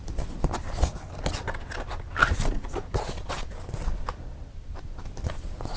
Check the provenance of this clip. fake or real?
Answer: real